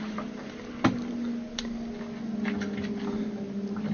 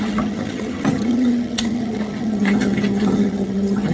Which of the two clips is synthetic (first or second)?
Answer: second